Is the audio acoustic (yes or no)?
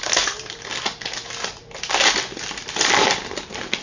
yes